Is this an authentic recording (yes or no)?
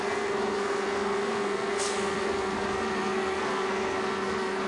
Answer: no